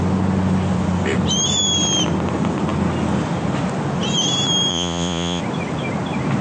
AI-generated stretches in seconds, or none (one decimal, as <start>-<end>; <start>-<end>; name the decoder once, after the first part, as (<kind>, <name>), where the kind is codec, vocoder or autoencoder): 4.7-5.4 (vocoder, Vocos)